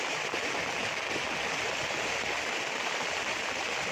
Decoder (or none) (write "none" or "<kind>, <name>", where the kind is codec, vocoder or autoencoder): none